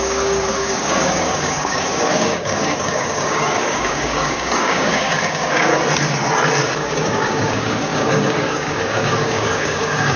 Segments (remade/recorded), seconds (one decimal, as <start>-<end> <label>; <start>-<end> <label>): 0.0-5.7 remade; 5.7-6.8 recorded; 6.8-10.2 remade